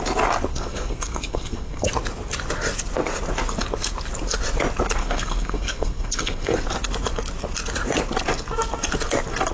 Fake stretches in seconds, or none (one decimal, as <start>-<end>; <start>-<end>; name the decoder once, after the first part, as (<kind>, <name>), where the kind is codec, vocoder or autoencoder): 0.5-1.9 (codec, SNAC); 5.0-6.6